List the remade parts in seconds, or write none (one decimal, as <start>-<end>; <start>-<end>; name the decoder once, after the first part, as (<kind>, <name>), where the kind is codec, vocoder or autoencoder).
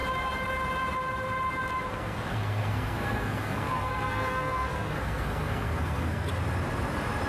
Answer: 1.9-6.3 (codec, SNAC)